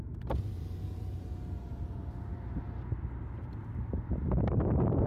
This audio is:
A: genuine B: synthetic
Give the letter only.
B